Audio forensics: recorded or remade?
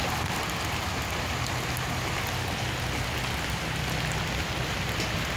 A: recorded